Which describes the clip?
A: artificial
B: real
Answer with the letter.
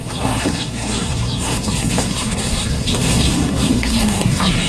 A